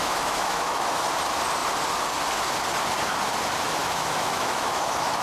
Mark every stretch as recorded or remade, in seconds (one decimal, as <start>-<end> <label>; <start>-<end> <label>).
0.0-1.1 remade; 1.1-3.8 recorded; 3.8-5.2 remade